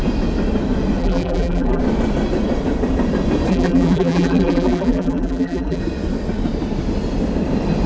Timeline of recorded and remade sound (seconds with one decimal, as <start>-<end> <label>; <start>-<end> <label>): 0.0-1.0 recorded; 1.0-1.8 remade; 1.8-3.5 recorded; 3.5-5.8 remade; 5.8-7.9 recorded